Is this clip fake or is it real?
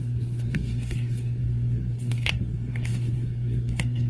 fake